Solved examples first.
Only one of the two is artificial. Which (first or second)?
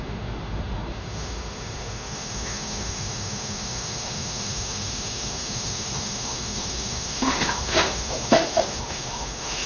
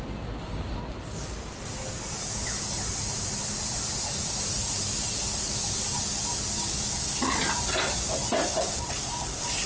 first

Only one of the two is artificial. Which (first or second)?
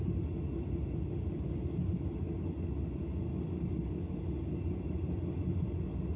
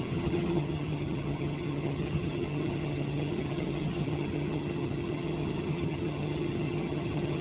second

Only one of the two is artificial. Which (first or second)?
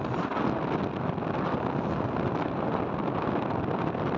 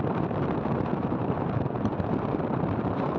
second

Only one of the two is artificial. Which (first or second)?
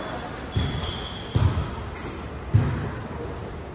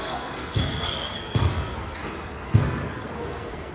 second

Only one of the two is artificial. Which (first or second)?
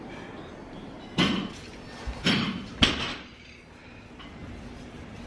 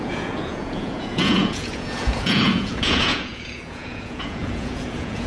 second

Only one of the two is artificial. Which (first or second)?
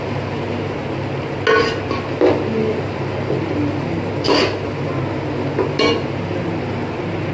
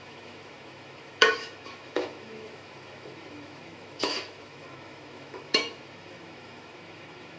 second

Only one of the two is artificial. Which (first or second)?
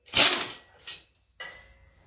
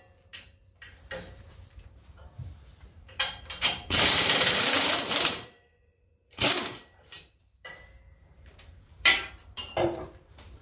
second